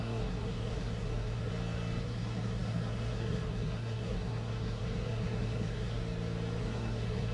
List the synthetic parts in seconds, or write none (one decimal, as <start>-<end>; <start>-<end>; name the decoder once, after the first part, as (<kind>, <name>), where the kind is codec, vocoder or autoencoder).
0.0-1.5 (codec, SNAC); 2.0-6.0; 6.6-7.3